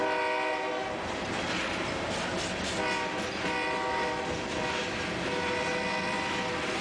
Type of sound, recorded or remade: recorded